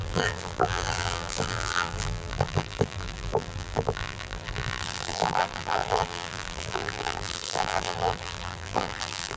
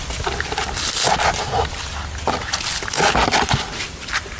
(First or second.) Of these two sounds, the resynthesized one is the first